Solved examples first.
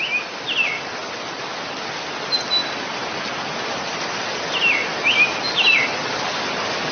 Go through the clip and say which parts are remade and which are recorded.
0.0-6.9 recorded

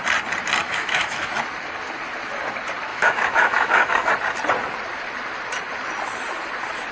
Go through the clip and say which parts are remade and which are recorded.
0.0-0.6 recorded; 0.6-1.3 remade; 1.3-2.9 recorded; 2.9-4.1 remade; 4.1-6.9 recorded

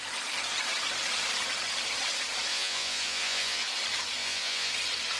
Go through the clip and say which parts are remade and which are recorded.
0.0-2.5 recorded; 2.5-3.6 remade; 3.6-4.2 recorded; 4.2-4.7 remade; 4.7-5.2 recorded

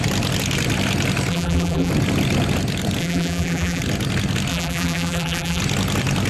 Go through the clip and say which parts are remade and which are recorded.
0.0-1.3 recorded; 1.3-1.9 remade; 1.9-3.0 recorded; 3.0-3.8 remade; 3.8-4.5 recorded; 4.5-5.6 remade; 5.6-6.3 recorded

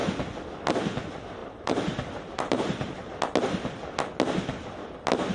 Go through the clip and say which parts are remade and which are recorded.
0.0-1.4 recorded; 1.4-3.2 remade; 3.2-5.3 recorded

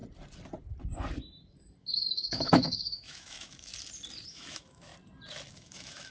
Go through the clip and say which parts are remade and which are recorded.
0.0-1.8 recorded; 1.8-3.7 remade; 3.7-4.3 recorded; 4.3-4.9 remade; 4.9-5.5 recorded; 5.5-6.1 remade